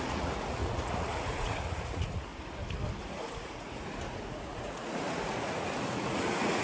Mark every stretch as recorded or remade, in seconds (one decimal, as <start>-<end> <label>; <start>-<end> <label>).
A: 0.0-2.3 remade; 2.3-3.0 recorded; 3.0-6.6 remade